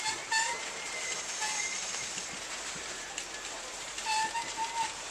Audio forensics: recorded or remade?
remade